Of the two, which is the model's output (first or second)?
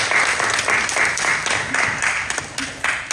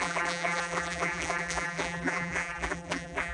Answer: second